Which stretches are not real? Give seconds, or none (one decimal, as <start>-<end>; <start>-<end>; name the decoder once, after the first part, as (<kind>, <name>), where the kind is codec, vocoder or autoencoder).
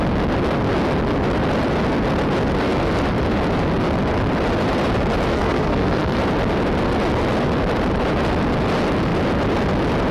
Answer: 5.3-6.2 (codec, SNAC)